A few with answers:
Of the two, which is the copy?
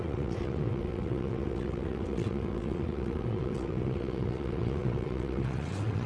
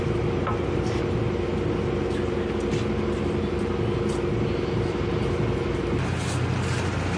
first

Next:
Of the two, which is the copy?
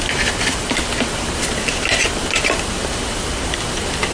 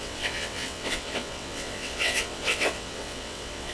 second